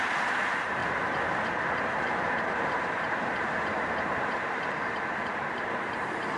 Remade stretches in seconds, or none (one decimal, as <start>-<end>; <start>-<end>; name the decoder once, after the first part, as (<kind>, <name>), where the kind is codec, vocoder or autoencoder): 0.0-0.8 (vocoder, BigVGAN v2); 1.8-6.4